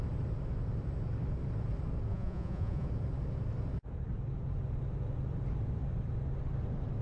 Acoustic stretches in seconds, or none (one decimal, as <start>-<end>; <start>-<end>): 0.0-2.1; 2.9-7.0